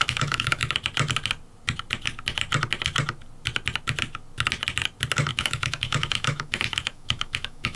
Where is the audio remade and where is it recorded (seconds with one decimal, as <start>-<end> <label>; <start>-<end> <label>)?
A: 0.0-0.6 remade; 0.6-5.3 recorded; 5.3-7.8 remade